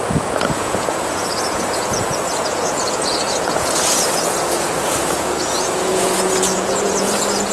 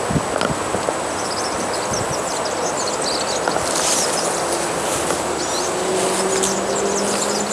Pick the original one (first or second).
second